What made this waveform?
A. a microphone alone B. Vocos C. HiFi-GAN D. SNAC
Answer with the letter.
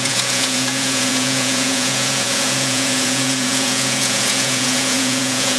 B